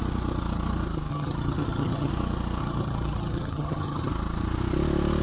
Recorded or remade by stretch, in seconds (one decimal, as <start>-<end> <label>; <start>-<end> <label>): 0.0-1.1 recorded; 1.1-2.1 remade; 2.1-2.6 recorded; 2.6-4.1 remade; 4.1-5.2 recorded

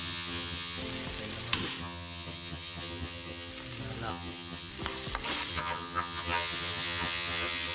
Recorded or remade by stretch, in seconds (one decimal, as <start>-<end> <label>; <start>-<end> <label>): 0.0-0.8 remade; 0.8-1.8 recorded; 1.8-3.5 remade; 3.5-4.1 recorded; 4.1-4.7 remade; 4.7-5.5 recorded; 5.5-7.7 remade

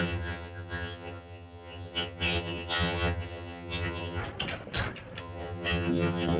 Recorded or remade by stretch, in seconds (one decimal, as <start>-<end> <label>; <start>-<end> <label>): 0.0-4.2 remade; 4.2-5.2 recorded; 5.2-6.4 remade

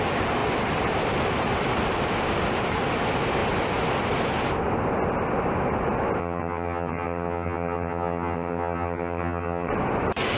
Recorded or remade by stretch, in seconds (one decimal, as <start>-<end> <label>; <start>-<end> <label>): 0.0-6.2 recorded; 6.2-9.7 remade; 9.7-10.4 recorded

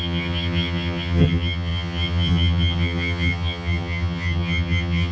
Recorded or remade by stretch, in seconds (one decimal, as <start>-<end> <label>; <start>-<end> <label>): 0.0-5.1 remade

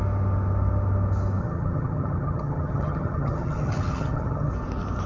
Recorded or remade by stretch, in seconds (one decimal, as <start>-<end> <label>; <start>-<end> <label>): 0.0-1.4 recorded; 1.4-4.5 remade; 4.5-5.1 recorded

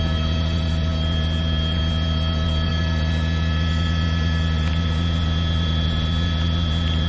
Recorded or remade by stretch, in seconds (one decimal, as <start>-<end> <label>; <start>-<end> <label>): 0.0-7.1 recorded

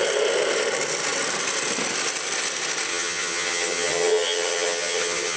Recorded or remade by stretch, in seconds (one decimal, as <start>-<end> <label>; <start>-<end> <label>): 0.0-2.9 recorded; 2.9-5.4 remade